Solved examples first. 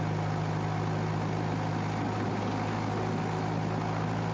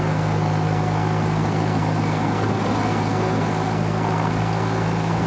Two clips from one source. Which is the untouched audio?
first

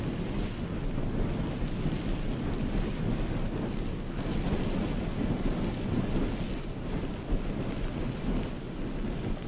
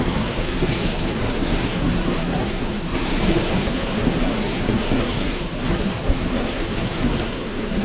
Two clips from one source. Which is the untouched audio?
first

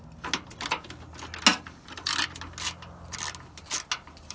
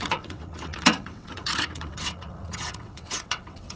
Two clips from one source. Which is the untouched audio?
first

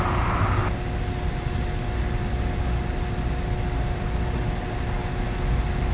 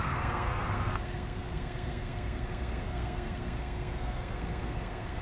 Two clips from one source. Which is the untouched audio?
first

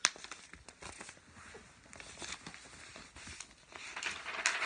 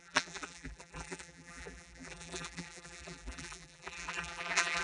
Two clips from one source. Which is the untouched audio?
first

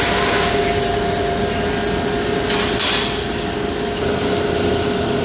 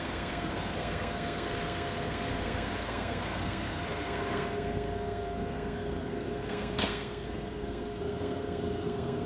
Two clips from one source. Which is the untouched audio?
first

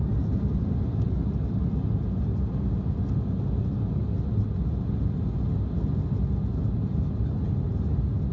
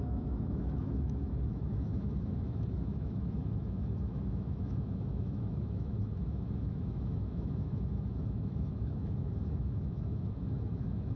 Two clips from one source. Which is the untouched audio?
first